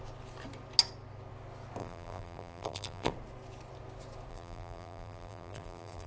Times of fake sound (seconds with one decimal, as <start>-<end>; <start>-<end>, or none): 1.8-3.1; 4.3-6.1